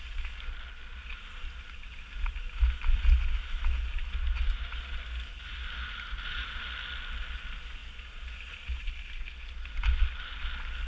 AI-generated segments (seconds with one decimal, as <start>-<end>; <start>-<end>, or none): none